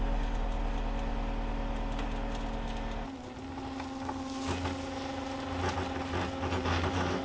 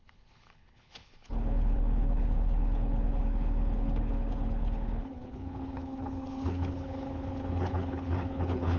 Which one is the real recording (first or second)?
first